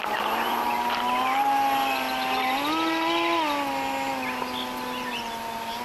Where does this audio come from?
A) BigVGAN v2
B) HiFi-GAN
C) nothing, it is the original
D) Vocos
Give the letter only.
C